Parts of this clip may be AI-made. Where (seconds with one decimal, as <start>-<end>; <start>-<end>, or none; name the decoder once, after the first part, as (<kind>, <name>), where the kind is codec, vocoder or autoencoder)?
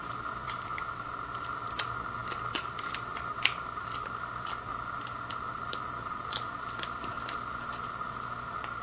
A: 0.4-1.7 (vocoder, BigVGAN v2); 2.2-7.1